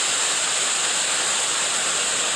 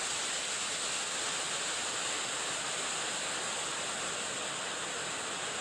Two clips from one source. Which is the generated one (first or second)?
first